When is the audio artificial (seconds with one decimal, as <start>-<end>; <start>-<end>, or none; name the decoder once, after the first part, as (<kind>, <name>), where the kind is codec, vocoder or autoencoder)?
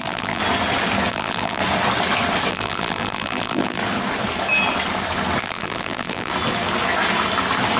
0.0-0.4 (vocoder, BigVGAN v2); 1.1-1.6; 2.5-3.8; 5.4-6.3